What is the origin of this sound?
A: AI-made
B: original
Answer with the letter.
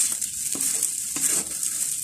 B